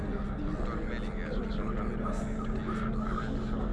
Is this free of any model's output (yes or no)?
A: yes